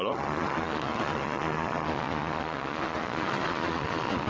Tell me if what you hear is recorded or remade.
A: remade